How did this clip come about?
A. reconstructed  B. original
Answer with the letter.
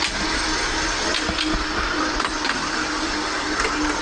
B